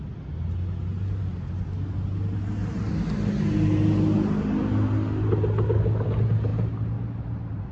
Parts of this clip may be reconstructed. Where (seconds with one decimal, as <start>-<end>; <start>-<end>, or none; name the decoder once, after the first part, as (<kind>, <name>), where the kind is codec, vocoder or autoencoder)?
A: none